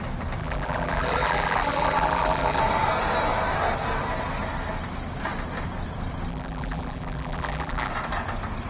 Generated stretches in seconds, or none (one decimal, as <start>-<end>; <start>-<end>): 0.4-2.6; 6.3-7.9